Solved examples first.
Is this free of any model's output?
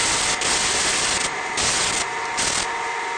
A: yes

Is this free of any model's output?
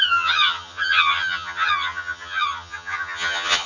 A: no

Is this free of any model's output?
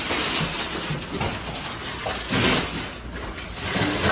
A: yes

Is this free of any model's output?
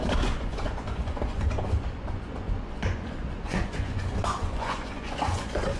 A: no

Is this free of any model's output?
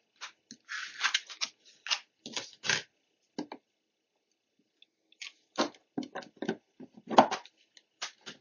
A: yes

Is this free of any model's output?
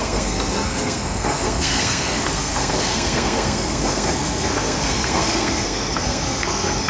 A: no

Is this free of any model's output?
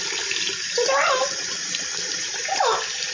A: yes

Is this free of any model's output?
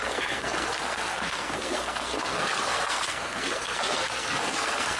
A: no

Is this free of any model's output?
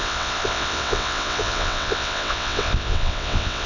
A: no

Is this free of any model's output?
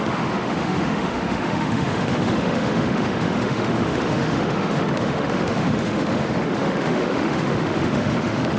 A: no